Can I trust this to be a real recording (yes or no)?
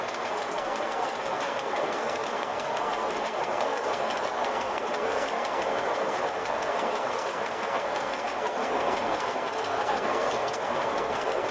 no